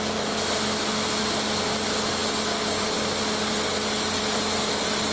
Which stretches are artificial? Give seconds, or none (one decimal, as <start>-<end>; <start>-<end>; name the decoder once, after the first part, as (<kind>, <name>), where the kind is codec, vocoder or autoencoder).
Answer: none